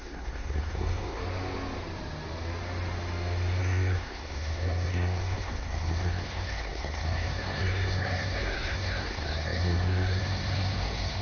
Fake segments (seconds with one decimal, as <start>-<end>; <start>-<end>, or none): 0.0-1.2; 3.6-11.2